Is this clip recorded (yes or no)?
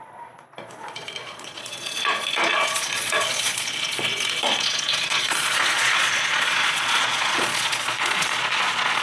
no